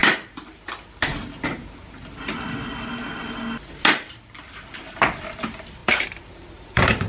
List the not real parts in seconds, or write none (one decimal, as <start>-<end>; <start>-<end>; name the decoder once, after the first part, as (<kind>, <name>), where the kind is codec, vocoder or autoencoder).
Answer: 1.1-3.1 (vocoder, BigVGAN v2); 5.8-7.1

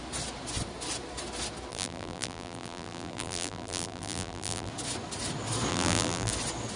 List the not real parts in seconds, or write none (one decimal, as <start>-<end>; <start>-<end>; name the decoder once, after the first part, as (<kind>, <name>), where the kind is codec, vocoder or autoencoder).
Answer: 1.7-4.7 (vocoder, BigVGAN v2); 5.7-6.3

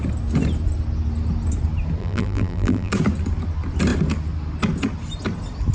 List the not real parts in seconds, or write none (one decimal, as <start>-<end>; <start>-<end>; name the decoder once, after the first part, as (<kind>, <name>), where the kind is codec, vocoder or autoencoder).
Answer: 2.0-2.9 (vocoder, BigVGAN v2)

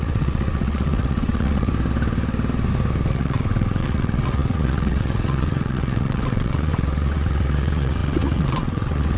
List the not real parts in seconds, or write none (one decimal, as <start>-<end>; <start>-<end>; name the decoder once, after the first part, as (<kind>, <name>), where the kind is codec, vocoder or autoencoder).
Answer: 0.0-1.7 (vocoder, WaveNeXt); 3.1-9.2

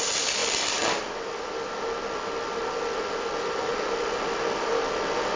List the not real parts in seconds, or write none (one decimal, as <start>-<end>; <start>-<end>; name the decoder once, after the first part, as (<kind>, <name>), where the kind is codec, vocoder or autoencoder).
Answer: none

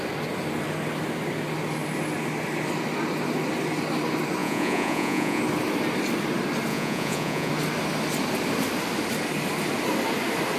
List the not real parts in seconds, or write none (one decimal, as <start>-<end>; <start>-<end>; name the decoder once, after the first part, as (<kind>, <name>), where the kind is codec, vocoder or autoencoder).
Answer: 4.4-5.4 (vocoder, Vocos); 6.7-7.5

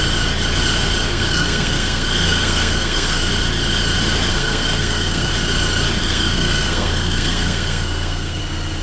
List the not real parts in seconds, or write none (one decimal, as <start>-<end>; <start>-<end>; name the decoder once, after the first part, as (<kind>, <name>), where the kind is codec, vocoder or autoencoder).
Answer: 1.1-3.3 (codec, SNAC); 4.3-5.3; 6.0-8.4

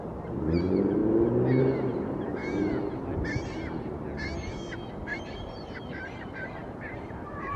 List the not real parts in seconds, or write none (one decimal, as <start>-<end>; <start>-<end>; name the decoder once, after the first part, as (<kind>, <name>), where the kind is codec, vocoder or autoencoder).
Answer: 0.0-1.0 (vocoder, BigVGAN v2); 1.6-2.4; 4.9-7.6